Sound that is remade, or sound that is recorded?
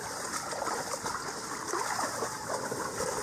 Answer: recorded